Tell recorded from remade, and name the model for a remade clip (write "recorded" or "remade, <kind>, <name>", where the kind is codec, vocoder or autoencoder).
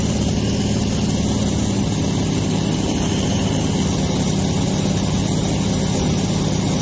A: recorded